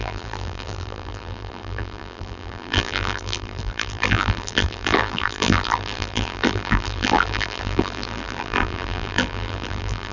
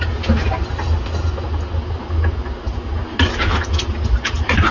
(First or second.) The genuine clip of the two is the second